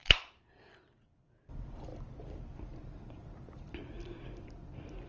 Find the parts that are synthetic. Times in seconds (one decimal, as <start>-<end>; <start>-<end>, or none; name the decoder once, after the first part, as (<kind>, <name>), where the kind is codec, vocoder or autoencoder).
0.6-1.9 (vocoder, BigVGAN v2)